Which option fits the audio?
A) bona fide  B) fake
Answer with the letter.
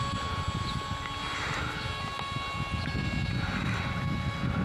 A